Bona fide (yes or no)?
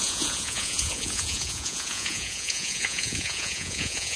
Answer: no